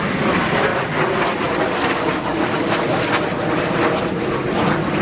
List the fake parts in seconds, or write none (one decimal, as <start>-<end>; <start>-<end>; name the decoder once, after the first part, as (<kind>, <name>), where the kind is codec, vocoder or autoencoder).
none